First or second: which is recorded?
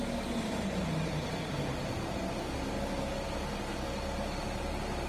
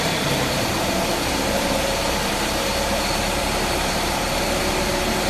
first